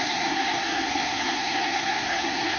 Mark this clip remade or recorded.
remade